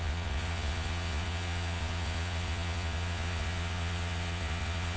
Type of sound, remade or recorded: remade